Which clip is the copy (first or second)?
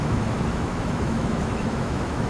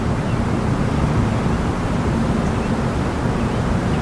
first